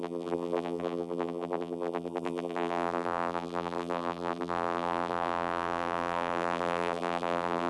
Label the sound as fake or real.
fake